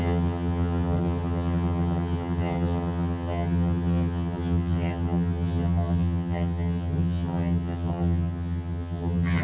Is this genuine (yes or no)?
no